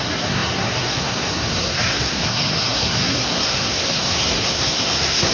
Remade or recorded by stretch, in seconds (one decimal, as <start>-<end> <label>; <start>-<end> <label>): 0.0-5.3 remade